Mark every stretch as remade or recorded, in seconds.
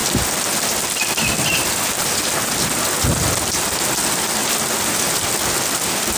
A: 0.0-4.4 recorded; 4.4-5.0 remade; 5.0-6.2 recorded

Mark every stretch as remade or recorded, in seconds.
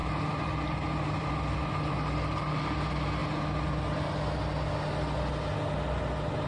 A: 0.0-1.4 remade; 1.4-6.5 recorded